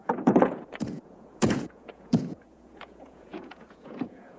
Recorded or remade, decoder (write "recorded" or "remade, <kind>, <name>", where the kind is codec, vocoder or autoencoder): remade, vocoder, Vocos